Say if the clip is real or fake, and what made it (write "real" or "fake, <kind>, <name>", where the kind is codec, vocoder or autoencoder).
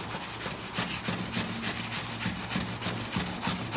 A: real